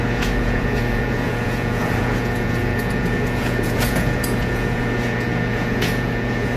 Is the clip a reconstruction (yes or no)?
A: yes